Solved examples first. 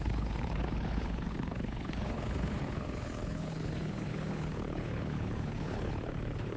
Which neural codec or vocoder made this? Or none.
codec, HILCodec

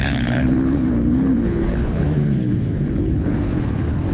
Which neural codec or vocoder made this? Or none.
codec, HILCodec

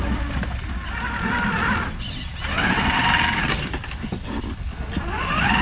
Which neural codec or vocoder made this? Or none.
none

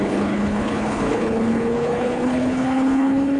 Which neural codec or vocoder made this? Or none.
codec, HILCodec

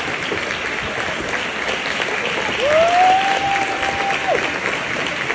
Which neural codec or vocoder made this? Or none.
none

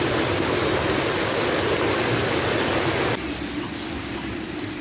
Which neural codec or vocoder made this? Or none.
none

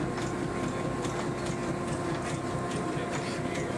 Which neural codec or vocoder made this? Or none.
none